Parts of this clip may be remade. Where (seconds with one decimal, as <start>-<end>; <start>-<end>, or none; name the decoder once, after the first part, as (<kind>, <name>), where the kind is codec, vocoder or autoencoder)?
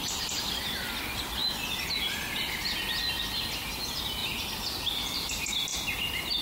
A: 1.4-2.6 (vocoder, BigVGAN v2); 4.2-5.3